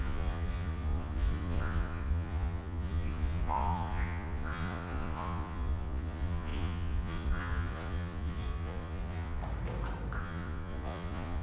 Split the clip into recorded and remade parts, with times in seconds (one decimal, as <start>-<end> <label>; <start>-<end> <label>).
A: 0.0-9.4 remade; 9.4-10.2 recorded; 10.2-11.4 remade